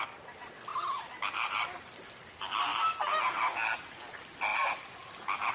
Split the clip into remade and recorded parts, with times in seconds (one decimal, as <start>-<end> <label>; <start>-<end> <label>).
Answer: 0.0-2.7 recorded; 2.7-3.2 remade; 3.2-4.5 recorded; 4.5-5.5 remade